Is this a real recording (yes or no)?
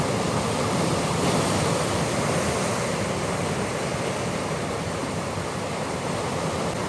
yes